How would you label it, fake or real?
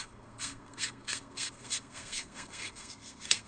fake